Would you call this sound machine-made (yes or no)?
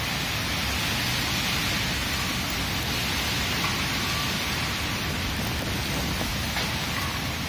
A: no